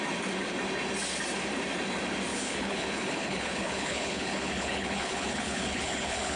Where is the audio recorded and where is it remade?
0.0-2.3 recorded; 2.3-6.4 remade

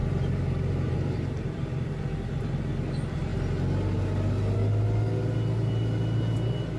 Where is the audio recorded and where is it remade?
0.0-2.7 remade; 2.7-6.8 recorded